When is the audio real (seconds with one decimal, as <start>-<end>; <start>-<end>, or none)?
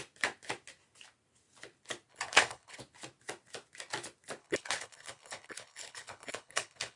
0.0-2.1; 2.8-4.4